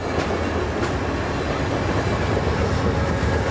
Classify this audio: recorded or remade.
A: recorded